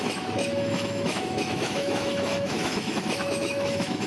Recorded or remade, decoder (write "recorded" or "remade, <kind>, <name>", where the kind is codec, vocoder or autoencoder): remade, autoencoder, DAC-VAE